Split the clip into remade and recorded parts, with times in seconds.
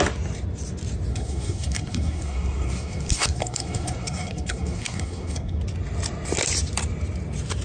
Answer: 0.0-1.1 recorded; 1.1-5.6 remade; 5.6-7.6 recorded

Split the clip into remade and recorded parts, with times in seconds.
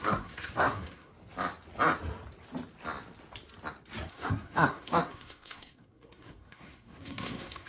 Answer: 0.0-1.1 remade; 1.1-4.1 recorded; 4.1-7.7 remade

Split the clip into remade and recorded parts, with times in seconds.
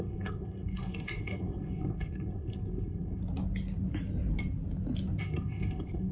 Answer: 0.0-3.2 remade; 3.2-5.2 recorded; 5.2-6.1 remade